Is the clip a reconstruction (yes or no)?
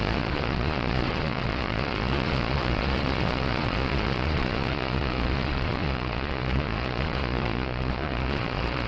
yes